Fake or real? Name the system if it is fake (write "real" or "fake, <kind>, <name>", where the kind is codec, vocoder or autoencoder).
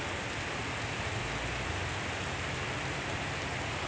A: real